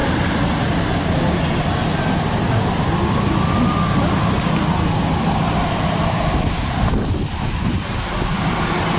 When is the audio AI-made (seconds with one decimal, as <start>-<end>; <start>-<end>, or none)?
none